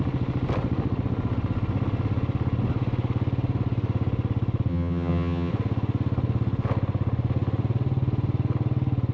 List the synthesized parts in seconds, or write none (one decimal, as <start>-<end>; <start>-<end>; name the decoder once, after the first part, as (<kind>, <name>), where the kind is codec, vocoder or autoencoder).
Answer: 4.7-5.5 (vocoder, HiFi-GAN)